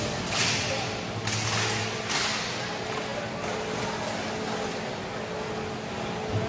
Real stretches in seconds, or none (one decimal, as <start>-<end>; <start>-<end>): 0.0-6.5